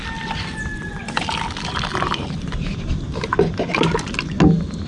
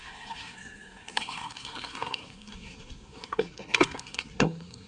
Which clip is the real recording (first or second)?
first